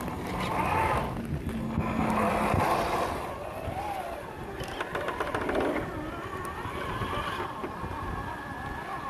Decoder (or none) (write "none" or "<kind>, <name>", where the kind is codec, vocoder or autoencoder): none